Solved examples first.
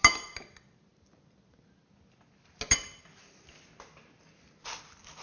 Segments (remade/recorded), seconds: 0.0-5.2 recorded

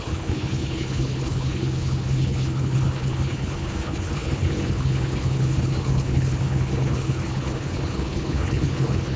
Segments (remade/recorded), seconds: 0.0-9.2 remade

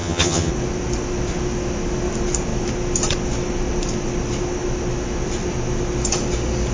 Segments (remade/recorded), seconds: 0.0-0.5 remade; 0.5-6.7 recorded

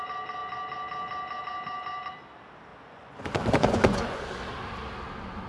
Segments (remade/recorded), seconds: 0.0-2.7 recorded; 2.7-4.2 remade; 4.2-5.5 recorded

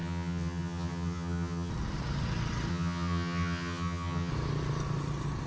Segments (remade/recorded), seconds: 0.0-1.7 remade; 1.7-2.7 recorded; 2.7-4.3 remade; 4.3-5.5 recorded

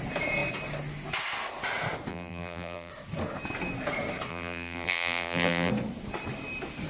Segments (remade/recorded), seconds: 0.0-2.1 recorded; 2.1-2.9 remade; 2.9-4.3 recorded; 4.3-5.7 remade; 5.7-6.9 recorded

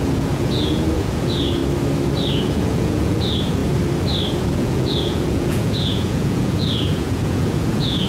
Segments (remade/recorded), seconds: 0.0-1.6 remade; 1.6-2.3 recorded; 2.3-3.6 remade; 3.6-4.3 recorded; 4.3-8.1 remade

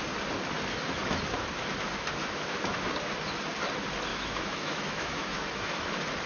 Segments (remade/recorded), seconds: 0.0-2.2 recorded; 2.2-2.8 remade; 2.8-4.1 recorded; 4.1-5.8 remade; 5.8-6.3 recorded